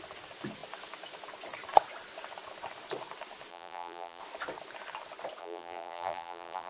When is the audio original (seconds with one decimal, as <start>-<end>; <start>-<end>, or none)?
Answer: 0.0-3.5; 4.2-5.4